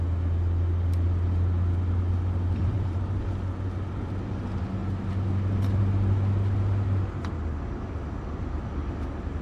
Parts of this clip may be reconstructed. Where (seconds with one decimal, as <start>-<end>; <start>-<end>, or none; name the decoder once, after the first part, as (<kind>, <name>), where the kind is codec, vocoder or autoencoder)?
2.6-3.2 (vocoder, BigVGAN v2); 4.8-5.8